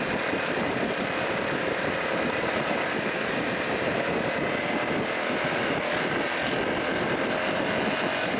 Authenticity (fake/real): real